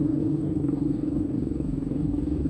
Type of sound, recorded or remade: remade